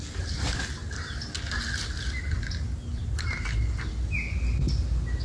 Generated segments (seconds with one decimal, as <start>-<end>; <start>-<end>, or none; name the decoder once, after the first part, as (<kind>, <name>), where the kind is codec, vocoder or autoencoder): none